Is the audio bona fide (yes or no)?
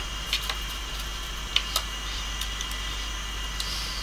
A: yes